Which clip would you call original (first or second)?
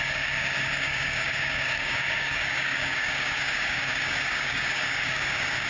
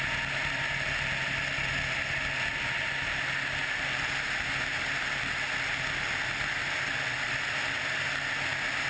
second